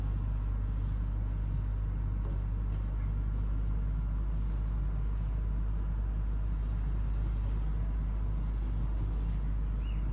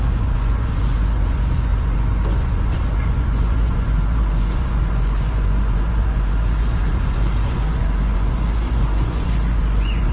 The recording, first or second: first